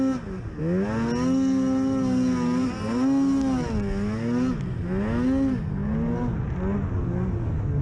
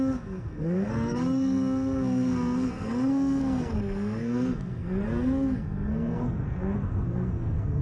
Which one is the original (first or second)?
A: first